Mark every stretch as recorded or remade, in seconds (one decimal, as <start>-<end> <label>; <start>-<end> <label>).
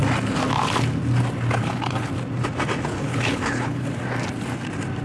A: 0.0-1.6 recorded; 1.6-2.1 remade; 2.1-2.9 recorded; 2.9-3.9 remade; 3.9-5.0 recorded